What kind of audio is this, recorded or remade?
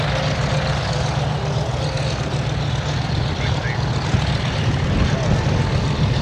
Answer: recorded